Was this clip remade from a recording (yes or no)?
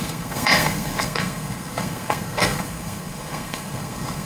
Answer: yes